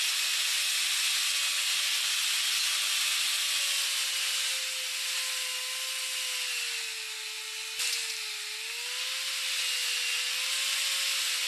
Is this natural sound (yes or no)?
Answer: yes